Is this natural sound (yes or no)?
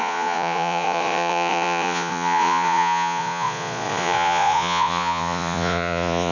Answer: no